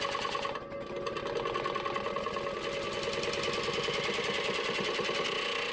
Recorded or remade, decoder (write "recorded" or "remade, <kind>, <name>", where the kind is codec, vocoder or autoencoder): recorded